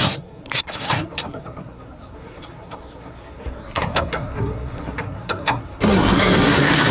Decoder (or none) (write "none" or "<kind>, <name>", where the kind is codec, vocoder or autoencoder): codec, SNAC